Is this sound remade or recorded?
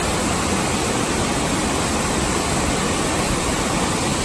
recorded